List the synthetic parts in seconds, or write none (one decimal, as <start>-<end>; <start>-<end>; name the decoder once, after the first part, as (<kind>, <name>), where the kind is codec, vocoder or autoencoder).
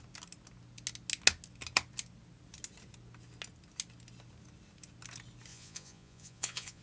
5.5-6.8 (vocoder, Vocos)